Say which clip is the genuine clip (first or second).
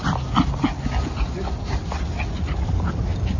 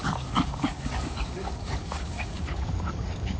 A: first